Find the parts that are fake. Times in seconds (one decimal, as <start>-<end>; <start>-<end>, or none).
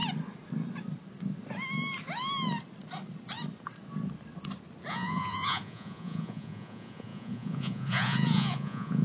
4.9-9.0